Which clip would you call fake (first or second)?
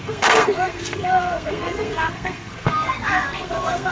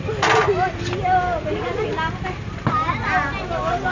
first